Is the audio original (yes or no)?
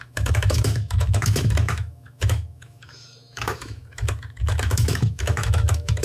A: no